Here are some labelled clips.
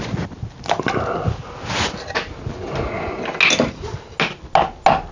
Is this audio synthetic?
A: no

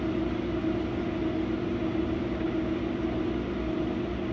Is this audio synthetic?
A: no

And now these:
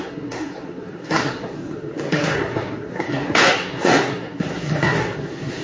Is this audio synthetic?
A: yes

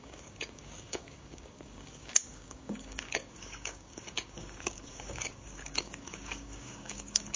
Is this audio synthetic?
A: yes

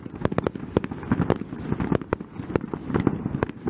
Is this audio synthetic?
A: no